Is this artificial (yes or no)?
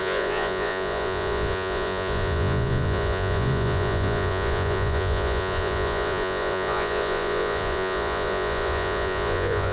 yes